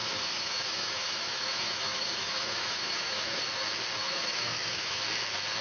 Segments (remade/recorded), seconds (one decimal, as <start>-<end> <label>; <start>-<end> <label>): 0.0-3.4 remade; 3.4-4.0 recorded; 4.0-5.0 remade; 5.0-5.6 recorded

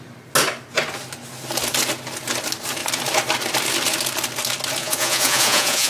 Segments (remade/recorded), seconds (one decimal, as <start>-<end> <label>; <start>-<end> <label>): 0.0-4.8 recorded; 4.8-5.9 remade

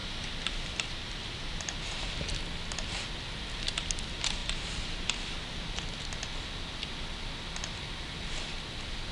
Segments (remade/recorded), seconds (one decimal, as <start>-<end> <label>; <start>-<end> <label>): 0.0-9.1 recorded

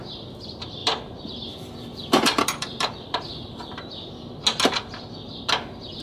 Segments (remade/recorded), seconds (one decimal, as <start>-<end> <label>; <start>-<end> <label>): 0.0-0.8 recorded; 0.8-4.4 remade; 4.4-6.0 recorded